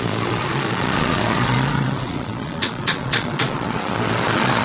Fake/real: fake